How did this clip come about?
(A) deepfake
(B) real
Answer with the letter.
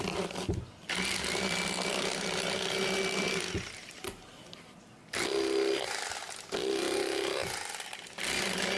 B